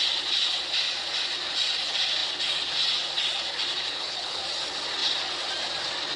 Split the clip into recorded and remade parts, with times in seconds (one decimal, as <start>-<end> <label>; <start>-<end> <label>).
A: 0.0-3.9 recorded; 3.9-4.4 remade; 4.4-6.2 recorded